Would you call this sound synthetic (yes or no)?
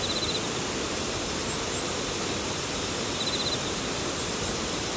no